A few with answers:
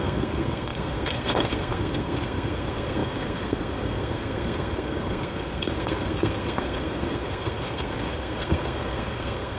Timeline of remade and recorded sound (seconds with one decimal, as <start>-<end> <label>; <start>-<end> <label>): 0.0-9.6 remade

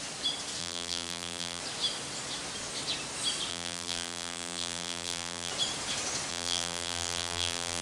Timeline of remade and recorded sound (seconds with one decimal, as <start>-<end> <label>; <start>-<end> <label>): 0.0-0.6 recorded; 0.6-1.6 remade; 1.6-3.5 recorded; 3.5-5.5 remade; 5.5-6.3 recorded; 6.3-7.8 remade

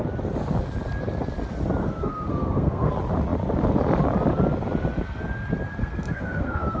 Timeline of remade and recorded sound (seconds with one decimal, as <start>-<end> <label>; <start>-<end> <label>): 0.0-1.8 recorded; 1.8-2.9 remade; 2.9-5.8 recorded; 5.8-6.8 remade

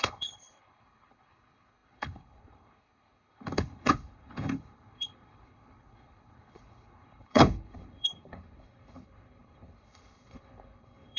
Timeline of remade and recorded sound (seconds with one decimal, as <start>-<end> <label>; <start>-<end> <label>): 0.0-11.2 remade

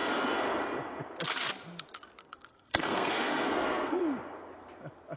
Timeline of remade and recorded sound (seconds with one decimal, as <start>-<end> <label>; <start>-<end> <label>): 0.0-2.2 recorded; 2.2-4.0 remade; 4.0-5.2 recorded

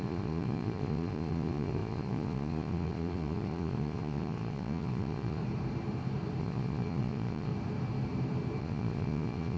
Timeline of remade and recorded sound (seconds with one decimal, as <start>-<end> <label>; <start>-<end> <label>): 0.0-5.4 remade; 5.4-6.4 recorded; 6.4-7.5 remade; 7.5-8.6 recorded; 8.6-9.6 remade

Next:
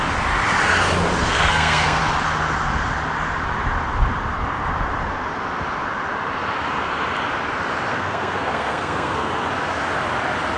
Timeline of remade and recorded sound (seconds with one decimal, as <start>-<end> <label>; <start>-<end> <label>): 0.0-1.2 recorded; 1.2-2.0 remade; 2.0-7.9 recorded; 7.9-9.3 remade; 9.3-10.6 recorded

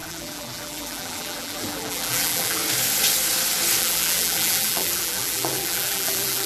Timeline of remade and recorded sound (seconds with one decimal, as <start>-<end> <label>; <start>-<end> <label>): 0.0-2.6 remade; 2.6-3.8 recorded; 3.8-6.5 remade